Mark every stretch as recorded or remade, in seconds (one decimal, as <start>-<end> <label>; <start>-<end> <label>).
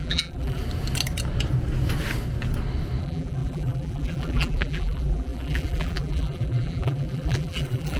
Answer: 0.0-0.6 remade; 0.6-3.0 recorded; 3.0-8.0 remade